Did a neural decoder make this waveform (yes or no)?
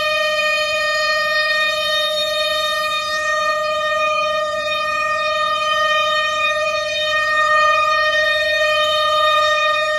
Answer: yes